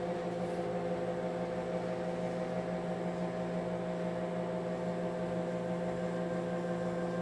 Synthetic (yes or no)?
no